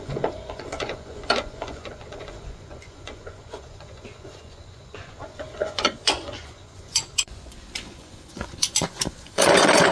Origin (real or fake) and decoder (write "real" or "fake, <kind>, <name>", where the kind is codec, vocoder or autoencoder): fake, vocoder, Vocos